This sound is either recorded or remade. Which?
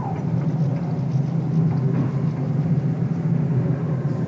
recorded